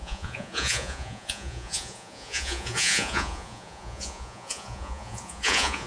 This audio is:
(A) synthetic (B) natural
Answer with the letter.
A